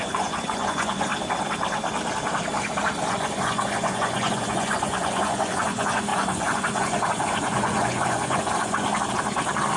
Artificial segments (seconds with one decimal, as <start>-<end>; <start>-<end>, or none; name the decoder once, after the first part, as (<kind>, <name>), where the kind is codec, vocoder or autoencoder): 0.0-1.1 (vocoder, Vocos); 3.1-8.9